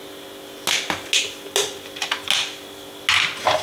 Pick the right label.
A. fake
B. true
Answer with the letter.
B